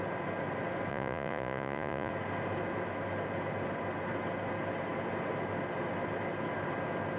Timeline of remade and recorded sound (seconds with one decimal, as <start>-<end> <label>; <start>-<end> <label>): 0.0-0.9 recorded; 0.9-2.1 remade; 2.1-7.2 recorded